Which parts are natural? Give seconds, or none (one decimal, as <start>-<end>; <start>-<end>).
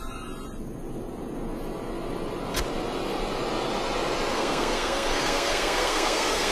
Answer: 0.0-4.3